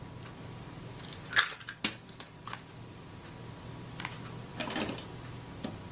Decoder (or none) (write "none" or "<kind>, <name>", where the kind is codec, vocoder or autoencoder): none